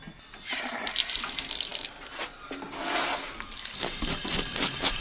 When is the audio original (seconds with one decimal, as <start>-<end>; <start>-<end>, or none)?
0.0-5.0